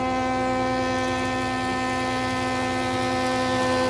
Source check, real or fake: real